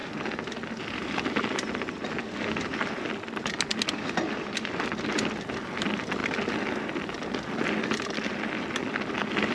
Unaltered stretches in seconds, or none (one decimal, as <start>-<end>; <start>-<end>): 0.0-9.5